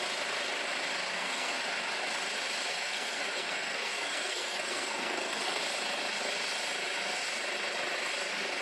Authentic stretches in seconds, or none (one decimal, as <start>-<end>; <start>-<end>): 0.0-1.1; 1.6-2.7; 5.6-8.6